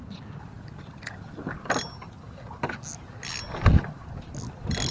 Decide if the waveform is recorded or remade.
recorded